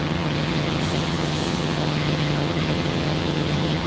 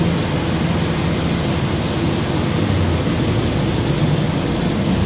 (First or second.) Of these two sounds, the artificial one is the first